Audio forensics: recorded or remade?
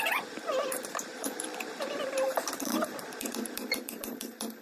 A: remade